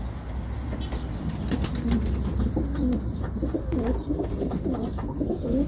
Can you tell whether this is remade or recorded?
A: recorded